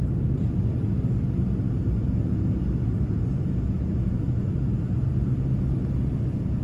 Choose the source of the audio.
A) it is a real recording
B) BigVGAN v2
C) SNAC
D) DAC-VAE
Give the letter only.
A